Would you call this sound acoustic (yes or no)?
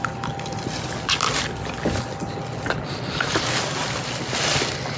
yes